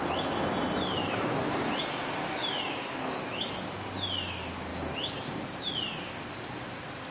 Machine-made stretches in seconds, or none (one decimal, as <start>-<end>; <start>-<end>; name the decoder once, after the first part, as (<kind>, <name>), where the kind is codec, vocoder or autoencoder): 1.0-1.5 (autoencoder, DAC-VAE); 2.4-3.5